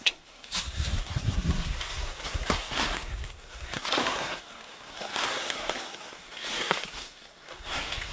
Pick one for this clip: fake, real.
fake